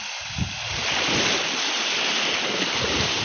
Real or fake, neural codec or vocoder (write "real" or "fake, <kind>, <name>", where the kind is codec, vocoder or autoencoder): real